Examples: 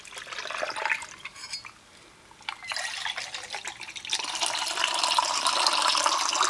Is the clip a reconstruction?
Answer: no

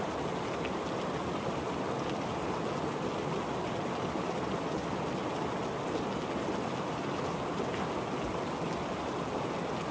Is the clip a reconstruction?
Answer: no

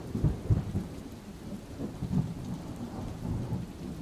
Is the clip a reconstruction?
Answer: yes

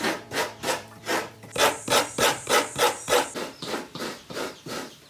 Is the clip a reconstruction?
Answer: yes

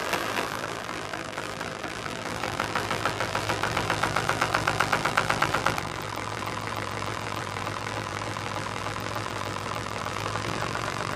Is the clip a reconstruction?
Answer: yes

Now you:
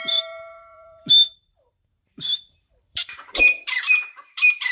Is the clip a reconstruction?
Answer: yes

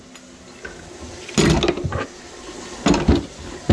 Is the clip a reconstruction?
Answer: no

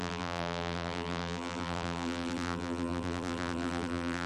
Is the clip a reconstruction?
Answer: yes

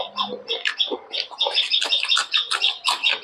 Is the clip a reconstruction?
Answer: no